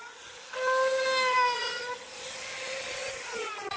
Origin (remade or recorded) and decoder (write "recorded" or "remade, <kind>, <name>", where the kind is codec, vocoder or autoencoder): recorded